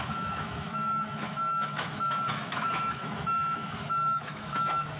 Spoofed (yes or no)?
yes